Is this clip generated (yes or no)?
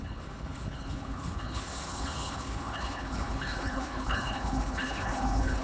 yes